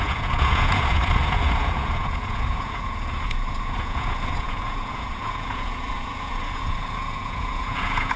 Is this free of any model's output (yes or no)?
no